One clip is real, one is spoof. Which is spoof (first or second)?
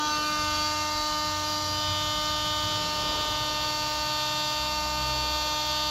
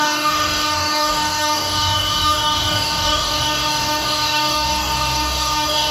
second